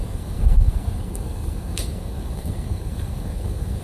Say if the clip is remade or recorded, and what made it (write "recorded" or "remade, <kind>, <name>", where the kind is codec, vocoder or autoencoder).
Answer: remade, codec, SNAC